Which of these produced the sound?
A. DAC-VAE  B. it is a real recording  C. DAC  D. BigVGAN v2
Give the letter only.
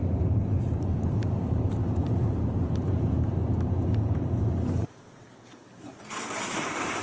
D